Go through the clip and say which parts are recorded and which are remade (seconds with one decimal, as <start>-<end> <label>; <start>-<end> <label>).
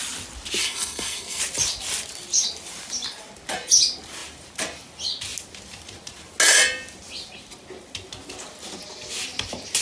0.0-0.6 recorded; 0.6-1.4 remade; 1.4-9.8 recorded